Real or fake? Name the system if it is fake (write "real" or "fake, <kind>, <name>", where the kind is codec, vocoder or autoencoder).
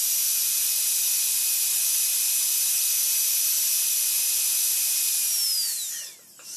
real